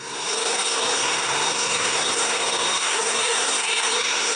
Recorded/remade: remade